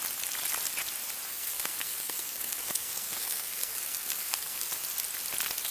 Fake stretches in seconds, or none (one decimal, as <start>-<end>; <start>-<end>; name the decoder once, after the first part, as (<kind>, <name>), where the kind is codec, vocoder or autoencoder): 1.3-4.7 (codec, SNAC)